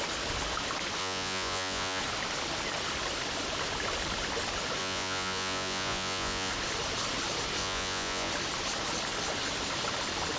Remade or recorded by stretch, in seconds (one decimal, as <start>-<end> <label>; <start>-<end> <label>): 0.0-1.0 recorded; 1.0-2.0 remade; 2.0-4.8 recorded; 4.8-6.5 remade; 6.5-7.6 recorded; 7.6-8.3 remade; 8.3-10.4 recorded